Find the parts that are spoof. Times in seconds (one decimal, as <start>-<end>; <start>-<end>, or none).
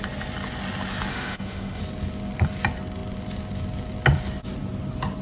1.1-1.8